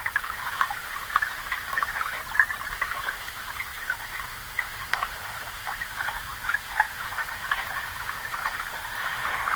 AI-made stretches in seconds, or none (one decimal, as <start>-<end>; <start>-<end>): 0.0-2.2; 2.7-9.6